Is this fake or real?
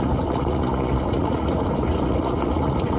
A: fake